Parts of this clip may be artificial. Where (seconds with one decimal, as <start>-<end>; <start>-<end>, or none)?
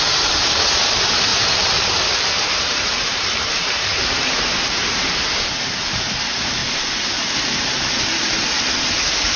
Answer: 1.3-5.6; 6.6-8.4